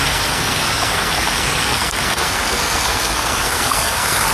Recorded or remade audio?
remade